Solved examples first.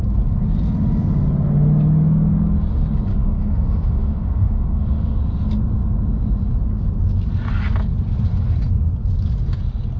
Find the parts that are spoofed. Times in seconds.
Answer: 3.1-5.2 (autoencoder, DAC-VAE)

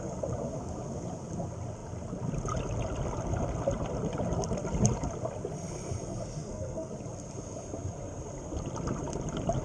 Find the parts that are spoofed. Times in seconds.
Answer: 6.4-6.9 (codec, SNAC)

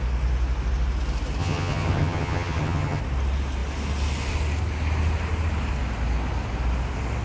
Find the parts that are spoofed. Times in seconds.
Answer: 1.4-3.0 (vocoder, HiFi-GAN)

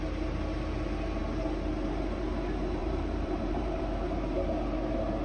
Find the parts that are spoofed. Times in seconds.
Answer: 2.8-3.8 (vocoder, BigVGAN v2)

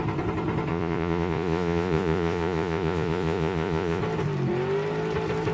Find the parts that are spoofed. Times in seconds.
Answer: 0.7-4.0 (vocoder, Vocos)

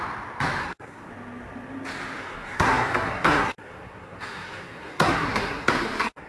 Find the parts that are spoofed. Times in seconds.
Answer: 0.6-1.1 (codec, SNAC); 2.2-6.3

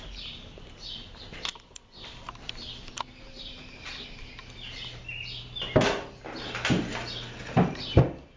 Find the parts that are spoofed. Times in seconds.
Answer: 1.5-5.0 (vocoder, BigVGAN v2)